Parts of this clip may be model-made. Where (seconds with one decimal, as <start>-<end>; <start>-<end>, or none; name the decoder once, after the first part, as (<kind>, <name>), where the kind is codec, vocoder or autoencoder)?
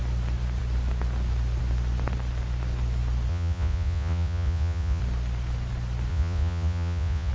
3.3-5.0 (vocoder, Vocos); 6.1-7.3